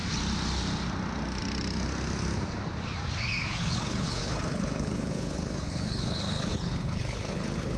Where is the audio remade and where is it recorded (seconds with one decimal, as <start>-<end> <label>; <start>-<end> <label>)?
0.0-3.5 recorded; 3.5-7.8 remade